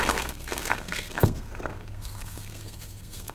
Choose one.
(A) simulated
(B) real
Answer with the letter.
A